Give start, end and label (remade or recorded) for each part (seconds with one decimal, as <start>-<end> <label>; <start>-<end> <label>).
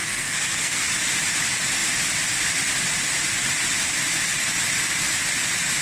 0.0-0.9 remade; 0.9-5.8 recorded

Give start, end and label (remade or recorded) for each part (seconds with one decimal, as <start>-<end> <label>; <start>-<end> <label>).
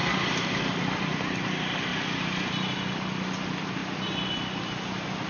0.0-0.8 remade; 0.8-5.3 recorded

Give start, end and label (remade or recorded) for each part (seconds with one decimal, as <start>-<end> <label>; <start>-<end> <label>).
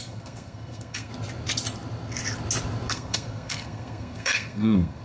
0.0-1.1 remade; 1.1-2.9 recorded; 2.9-5.0 remade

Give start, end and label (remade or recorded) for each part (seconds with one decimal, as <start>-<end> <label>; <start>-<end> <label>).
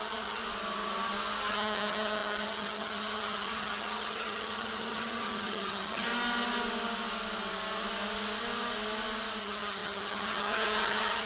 0.0-0.4 remade; 0.4-1.5 recorded; 1.5-6.1 remade; 6.1-9.4 recorded; 9.4-11.3 remade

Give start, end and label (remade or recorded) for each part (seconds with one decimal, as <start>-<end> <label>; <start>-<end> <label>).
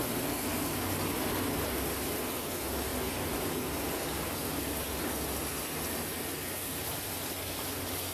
0.0-8.1 recorded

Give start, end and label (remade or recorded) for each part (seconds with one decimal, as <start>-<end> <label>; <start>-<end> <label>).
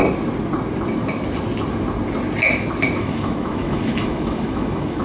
0.0-3.0 recorded; 3.0-5.0 remade